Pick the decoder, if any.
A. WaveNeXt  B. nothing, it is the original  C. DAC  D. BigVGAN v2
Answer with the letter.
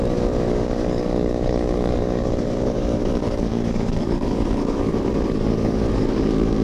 C